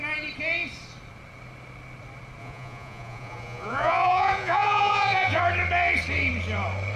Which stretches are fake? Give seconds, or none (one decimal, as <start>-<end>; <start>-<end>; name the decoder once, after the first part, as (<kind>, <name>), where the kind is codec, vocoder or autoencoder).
2.4-5.4 (vocoder, Vocos)